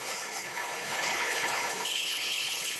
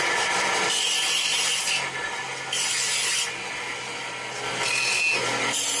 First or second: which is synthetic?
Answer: first